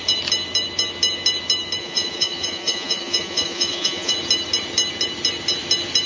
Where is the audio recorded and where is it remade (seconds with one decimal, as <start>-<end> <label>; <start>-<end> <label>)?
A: 0.0-1.8 recorded; 1.8-4.1 remade; 4.1-6.1 recorded

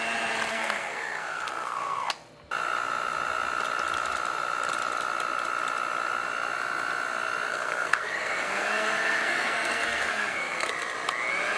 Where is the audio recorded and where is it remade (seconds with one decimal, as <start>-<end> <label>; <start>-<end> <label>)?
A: 0.0-0.5 recorded; 0.5-2.1 remade; 2.1-7.5 recorded; 7.5-10.7 remade; 10.7-11.6 recorded